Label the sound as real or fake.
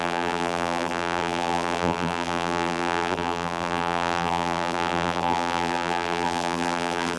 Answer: fake